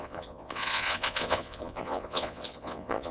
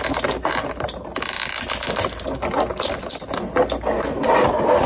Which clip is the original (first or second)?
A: second